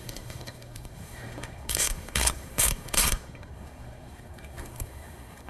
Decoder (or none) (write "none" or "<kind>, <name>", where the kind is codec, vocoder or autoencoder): codec, SNAC